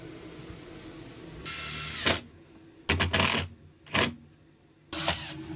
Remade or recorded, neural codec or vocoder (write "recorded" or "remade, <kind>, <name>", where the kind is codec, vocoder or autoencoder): recorded